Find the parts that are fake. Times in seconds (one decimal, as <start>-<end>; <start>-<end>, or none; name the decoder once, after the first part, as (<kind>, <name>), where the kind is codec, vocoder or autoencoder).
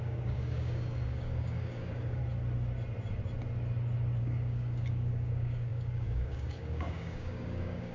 0.0-2.2 (codec, DAC); 4.2-7.9